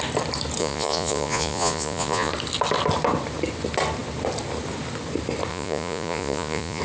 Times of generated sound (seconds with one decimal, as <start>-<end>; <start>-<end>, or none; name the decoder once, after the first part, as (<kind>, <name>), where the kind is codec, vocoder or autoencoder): 0.6-2.3 (vocoder, Vocos); 5.5-6.8